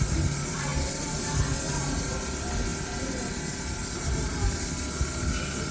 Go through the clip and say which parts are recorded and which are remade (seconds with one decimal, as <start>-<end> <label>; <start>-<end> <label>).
0.0-5.7 recorded